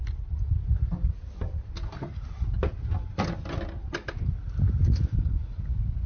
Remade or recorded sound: recorded